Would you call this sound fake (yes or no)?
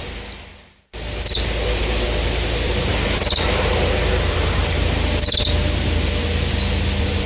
no